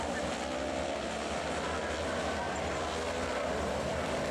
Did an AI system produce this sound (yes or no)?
no